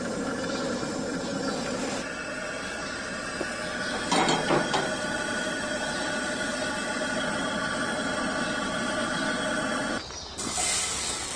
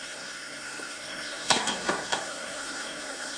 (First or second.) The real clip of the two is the first